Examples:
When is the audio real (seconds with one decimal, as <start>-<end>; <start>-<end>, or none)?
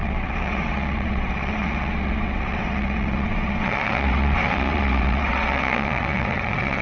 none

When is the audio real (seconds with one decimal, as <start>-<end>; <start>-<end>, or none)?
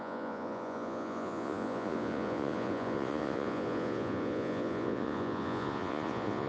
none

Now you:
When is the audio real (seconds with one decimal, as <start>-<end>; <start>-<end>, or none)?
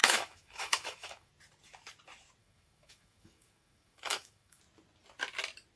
1.3-2.4; 4.6-5.8